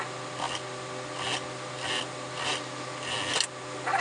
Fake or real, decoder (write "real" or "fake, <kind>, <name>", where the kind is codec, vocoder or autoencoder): real